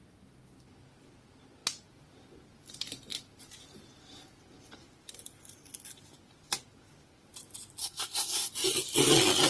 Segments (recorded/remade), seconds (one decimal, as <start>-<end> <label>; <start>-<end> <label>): 0.0-7.8 recorded; 7.8-8.5 remade; 8.5-9.5 recorded